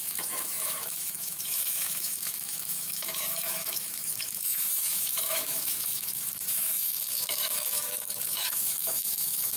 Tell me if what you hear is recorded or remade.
remade